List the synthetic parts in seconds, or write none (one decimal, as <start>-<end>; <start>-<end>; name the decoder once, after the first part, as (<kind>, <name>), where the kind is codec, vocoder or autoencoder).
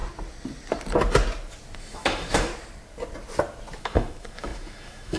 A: 1.8-2.5 (autoencoder, DAC-VAE); 3.8-5.2